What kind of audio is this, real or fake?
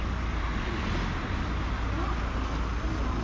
real